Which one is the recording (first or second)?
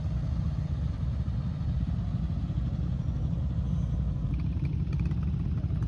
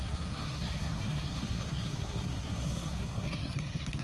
first